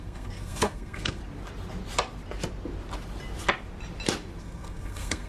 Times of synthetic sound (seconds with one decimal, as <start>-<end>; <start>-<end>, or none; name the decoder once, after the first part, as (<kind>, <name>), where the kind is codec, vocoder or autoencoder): 0.0-1.2 (codec, SNAC); 4.4-5.3